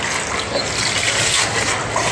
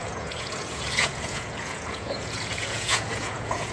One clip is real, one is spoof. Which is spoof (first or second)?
second